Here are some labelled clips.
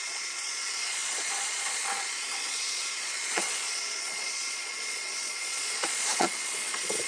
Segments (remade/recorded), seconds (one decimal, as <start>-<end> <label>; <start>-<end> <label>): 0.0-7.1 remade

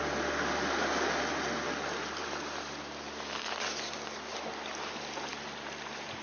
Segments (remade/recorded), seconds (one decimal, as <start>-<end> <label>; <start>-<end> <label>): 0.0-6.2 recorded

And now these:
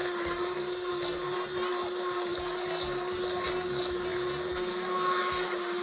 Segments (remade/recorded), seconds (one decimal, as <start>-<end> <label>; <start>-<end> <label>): 0.0-4.7 recorded; 4.7-5.2 remade; 5.2-5.8 recorded

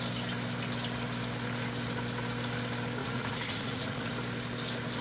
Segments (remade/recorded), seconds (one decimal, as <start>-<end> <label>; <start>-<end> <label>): 0.0-3.0 recorded; 3.0-4.1 remade; 4.1-5.0 recorded